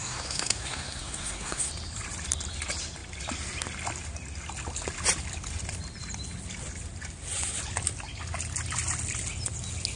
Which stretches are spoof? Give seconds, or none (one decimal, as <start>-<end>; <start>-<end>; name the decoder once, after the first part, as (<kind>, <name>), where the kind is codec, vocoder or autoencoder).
0.0-1.7 (codec, SNAC)